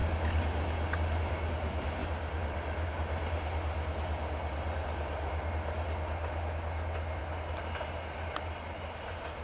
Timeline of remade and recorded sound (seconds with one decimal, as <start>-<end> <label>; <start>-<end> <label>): 0.0-9.4 recorded